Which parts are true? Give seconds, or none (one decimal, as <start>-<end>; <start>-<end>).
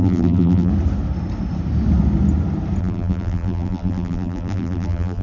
0.7-2.8